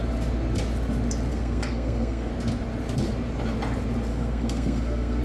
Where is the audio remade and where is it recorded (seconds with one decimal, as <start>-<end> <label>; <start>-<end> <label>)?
0.0-1.3 recorded; 1.3-2.3 remade; 2.3-4.1 recorded; 4.1-5.2 remade